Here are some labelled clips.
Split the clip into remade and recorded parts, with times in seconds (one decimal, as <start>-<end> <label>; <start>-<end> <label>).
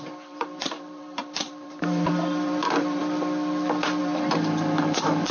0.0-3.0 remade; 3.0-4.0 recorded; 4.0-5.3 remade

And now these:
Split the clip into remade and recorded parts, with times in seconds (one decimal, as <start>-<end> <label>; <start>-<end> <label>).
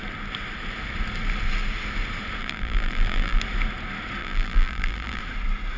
0.0-2.4 recorded; 2.4-3.4 remade; 3.4-4.2 recorded; 4.2-5.2 remade; 5.2-5.8 recorded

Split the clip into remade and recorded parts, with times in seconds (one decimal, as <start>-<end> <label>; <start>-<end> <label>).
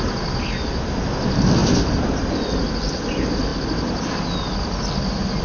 0.0-5.4 recorded